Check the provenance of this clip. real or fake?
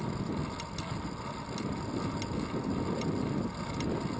real